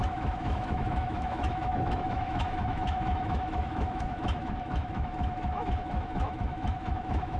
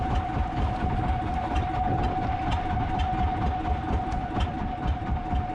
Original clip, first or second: second